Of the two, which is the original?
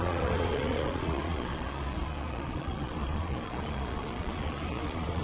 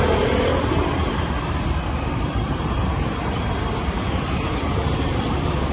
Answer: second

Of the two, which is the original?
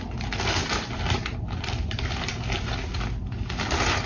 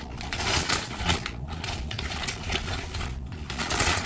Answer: first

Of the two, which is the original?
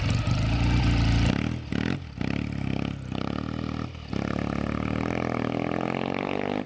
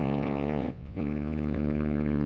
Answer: first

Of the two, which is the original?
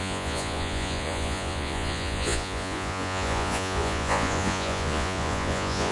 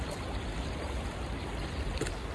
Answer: second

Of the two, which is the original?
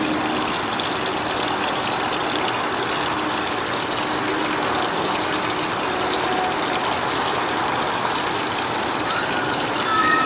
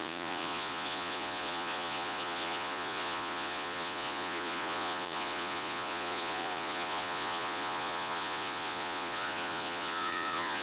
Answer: first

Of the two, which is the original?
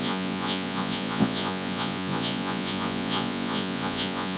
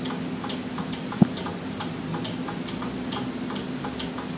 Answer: second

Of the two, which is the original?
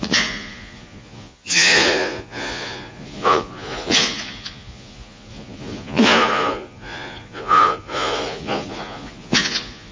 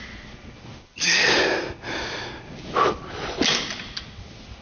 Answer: second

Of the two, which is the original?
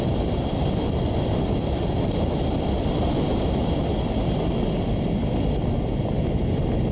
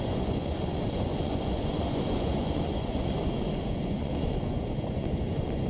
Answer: first